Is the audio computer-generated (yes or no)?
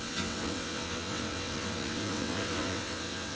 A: yes